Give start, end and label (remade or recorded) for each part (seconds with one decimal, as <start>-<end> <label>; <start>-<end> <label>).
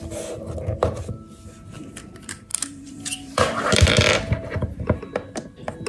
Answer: 0.0-2.5 recorded; 2.5-3.9 remade; 3.9-5.9 recorded